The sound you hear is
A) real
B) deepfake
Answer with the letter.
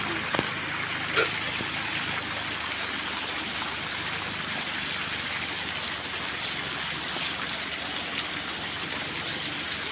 A